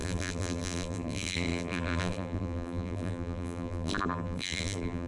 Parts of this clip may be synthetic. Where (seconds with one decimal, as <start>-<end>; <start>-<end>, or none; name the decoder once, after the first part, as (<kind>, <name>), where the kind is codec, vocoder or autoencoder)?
0.0-5.1 (vocoder, BigVGAN v2)